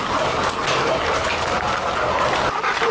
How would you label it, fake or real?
real